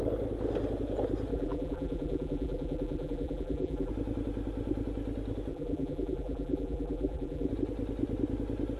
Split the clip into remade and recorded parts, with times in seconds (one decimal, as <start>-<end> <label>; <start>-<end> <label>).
0.0-1.3 recorded; 1.3-3.9 remade; 3.9-5.5 recorded; 5.5-7.5 remade; 7.5-8.8 recorded

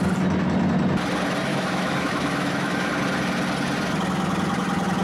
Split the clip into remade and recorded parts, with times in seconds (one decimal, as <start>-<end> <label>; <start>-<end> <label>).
0.0-1.5 recorded; 1.5-2.9 remade; 2.9-5.0 recorded

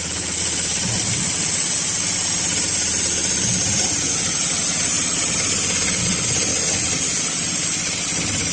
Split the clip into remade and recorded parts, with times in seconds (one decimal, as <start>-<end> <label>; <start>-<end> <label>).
0.0-8.5 recorded

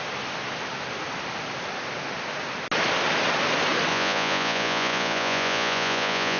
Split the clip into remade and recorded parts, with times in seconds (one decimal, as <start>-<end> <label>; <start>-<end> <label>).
0.0-3.9 recorded; 3.9-6.4 remade

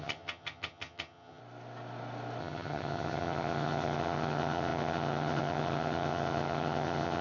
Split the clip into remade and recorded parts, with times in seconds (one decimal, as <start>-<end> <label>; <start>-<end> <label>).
0.0-1.4 remade; 1.4-2.4 recorded; 2.4-7.2 remade

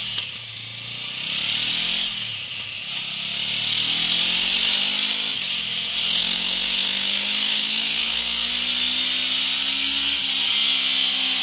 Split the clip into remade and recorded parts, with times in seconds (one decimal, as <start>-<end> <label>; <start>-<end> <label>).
0.0-6.0 recorded; 6.0-8.5 remade; 8.5-11.4 recorded